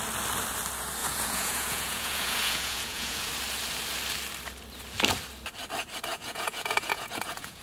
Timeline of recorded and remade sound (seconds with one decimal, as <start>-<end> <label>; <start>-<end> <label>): 0.0-1.0 recorded; 1.0-3.3 remade; 3.3-6.1 recorded; 6.1-7.6 remade